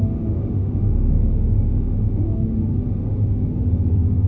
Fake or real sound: fake